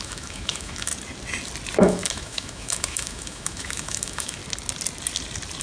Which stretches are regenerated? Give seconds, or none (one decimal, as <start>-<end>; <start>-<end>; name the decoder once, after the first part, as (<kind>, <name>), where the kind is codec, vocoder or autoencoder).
0.0-0.9 (autoencoder, DAC-VAE); 1.8-4.4